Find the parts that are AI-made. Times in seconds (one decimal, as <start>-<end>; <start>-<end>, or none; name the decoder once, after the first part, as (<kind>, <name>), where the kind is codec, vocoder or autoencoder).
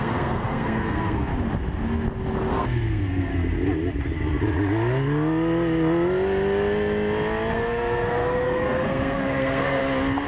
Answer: 0.0-1.3 (codec, SNAC); 2.5-3.3; 7.5-9.8